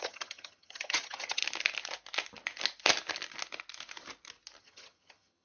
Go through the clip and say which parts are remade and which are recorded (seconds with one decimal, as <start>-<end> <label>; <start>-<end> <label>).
0.0-1.4 remade; 1.4-4.6 recorded; 4.6-5.4 remade